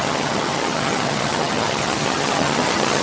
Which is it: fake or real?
fake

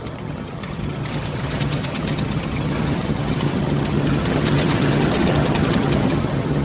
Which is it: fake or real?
fake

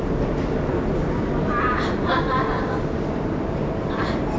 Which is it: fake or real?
real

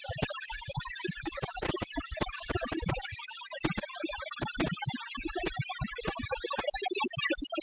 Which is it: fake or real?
real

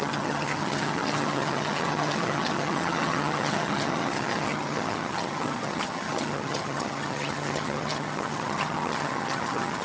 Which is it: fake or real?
fake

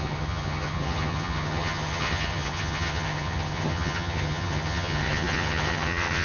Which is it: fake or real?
fake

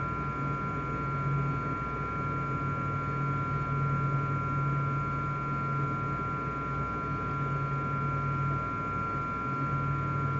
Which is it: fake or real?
real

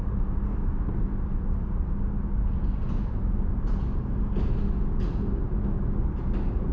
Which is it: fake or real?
real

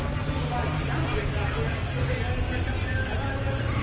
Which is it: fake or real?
real